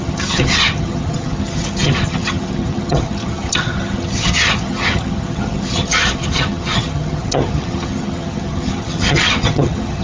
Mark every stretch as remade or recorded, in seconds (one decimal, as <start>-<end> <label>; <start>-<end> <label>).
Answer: 0.0-10.0 remade